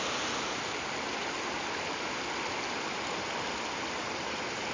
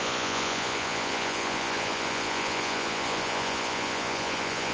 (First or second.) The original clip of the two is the first